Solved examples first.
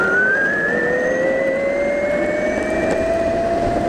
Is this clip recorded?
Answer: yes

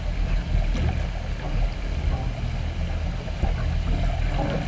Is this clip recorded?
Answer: yes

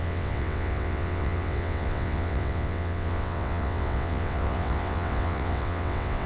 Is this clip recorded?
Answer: no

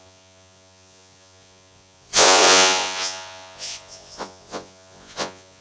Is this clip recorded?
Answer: no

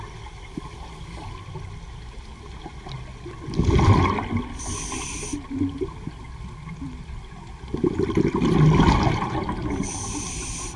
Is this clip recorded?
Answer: yes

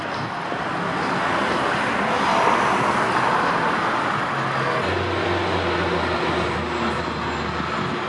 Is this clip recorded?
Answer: yes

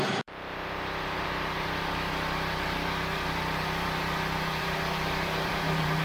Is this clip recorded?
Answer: no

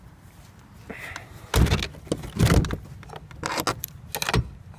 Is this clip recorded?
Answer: yes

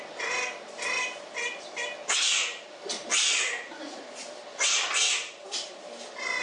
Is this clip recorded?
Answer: yes